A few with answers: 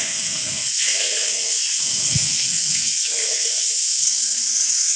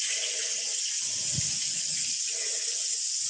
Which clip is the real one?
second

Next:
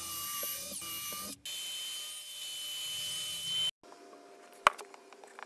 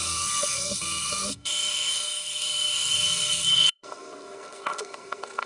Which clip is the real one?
first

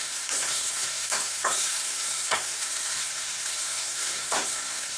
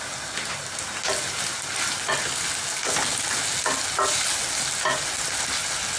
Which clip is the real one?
second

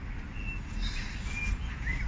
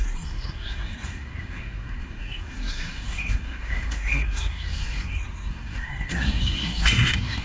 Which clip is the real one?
first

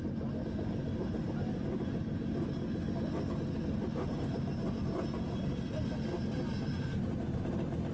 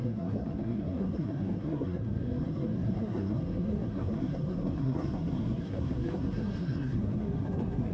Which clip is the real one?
first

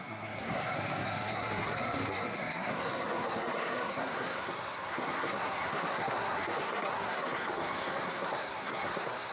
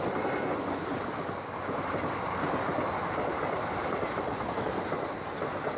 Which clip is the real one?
second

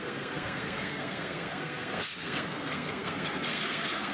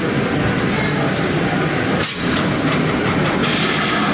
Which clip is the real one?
second